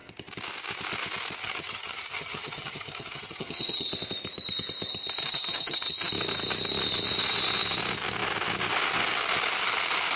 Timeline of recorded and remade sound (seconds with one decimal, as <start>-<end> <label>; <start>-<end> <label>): 0.0-1.4 recorded; 1.4-3.9 remade; 3.9-5.2 recorded; 5.2-6.1 remade; 6.1-10.2 recorded